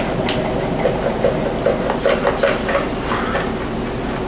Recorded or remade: recorded